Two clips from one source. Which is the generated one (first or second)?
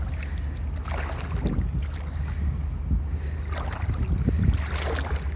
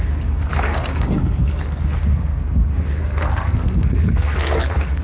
second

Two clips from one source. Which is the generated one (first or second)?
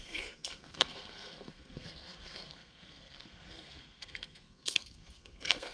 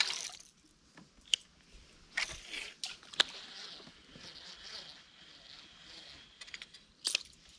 first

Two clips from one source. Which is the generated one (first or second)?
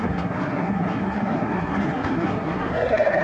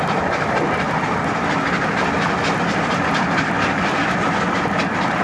first